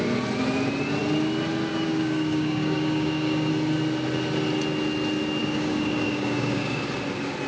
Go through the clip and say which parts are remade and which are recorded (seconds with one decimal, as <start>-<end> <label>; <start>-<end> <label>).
0.0-1.7 recorded; 1.7-3.5 remade; 3.5-5.4 recorded; 5.4-6.8 remade; 6.8-7.5 recorded